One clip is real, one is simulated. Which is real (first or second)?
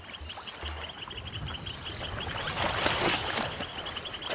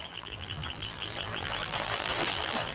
first